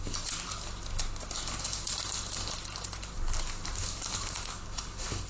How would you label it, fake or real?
real